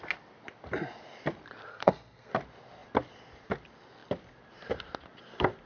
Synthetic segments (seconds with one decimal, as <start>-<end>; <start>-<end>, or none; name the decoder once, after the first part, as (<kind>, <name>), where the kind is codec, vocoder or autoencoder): 1.7-2.3 (codec, SNAC)